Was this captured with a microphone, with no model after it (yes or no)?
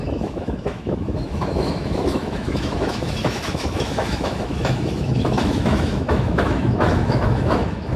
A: no